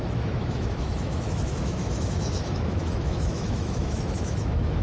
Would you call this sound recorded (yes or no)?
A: no